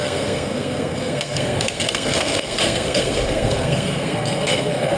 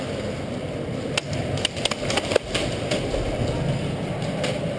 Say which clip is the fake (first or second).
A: first